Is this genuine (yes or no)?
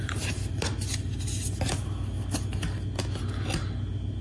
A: yes